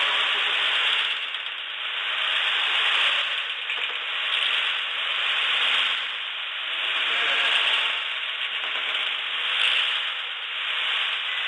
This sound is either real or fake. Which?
real